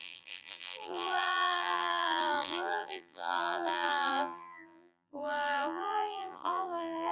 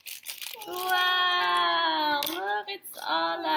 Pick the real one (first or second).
second